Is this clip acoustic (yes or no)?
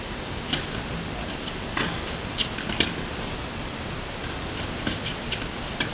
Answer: yes